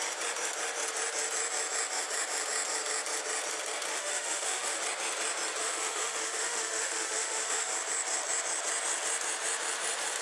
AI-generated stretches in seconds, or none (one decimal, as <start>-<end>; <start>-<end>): 3.9-4.8; 5.6-7.7